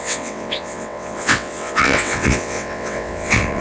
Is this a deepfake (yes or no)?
yes